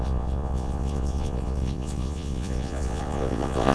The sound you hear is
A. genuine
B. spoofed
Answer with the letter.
B